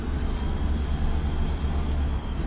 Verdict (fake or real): real